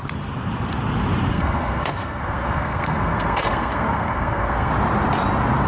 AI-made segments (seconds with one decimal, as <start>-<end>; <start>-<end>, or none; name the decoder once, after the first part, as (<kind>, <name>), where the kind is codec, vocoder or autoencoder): 1.3-4.7 (codec, SNAC)